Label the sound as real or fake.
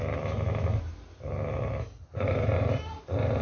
real